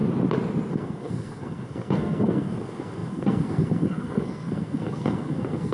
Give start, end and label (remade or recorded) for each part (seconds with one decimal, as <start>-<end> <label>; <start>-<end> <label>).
0.0-0.7 recorded; 0.7-5.7 remade